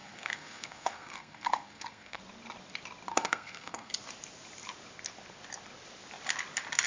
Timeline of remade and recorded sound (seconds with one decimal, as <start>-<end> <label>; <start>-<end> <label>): 0.0-2.2 remade; 2.2-3.1 recorded; 3.1-3.9 remade; 3.9-6.9 recorded